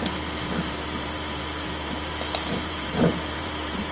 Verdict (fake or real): fake